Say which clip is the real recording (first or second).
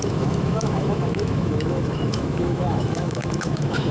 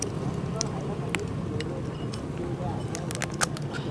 second